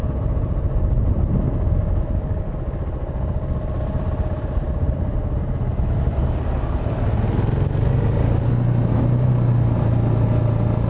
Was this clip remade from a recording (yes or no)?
no